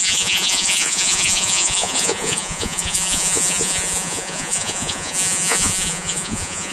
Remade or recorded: remade